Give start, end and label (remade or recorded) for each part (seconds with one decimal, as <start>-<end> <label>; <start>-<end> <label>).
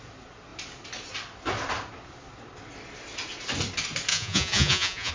0.0-4.1 recorded; 4.1-5.1 remade